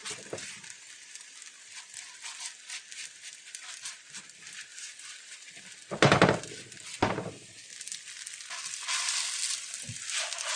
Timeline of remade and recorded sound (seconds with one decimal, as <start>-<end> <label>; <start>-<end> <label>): 0.0-10.6 recorded